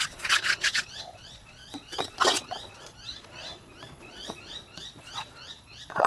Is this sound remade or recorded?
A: remade